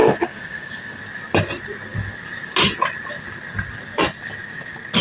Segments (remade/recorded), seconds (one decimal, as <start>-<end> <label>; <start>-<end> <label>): 0.0-1.0 remade; 1.0-5.0 recorded